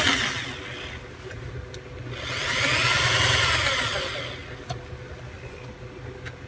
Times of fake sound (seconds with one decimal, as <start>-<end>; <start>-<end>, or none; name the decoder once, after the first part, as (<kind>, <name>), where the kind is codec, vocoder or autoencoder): none